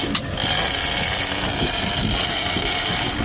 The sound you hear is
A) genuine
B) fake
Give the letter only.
A